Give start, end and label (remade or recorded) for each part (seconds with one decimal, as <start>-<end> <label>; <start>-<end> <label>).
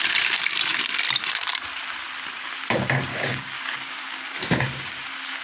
0.0-3.1 recorded; 3.1-5.4 remade